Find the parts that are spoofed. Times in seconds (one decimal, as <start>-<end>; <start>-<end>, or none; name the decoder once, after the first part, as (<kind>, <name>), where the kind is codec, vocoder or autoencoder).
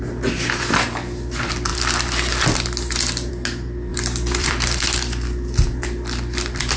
3.9-4.8 (vocoder, BigVGAN v2)